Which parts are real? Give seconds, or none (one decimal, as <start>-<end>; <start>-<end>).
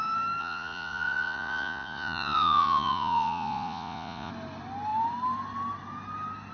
0.0-0.4; 4.3-6.5